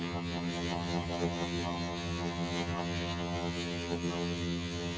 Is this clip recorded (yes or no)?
no